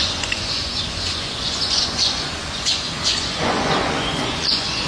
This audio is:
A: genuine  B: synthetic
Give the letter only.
B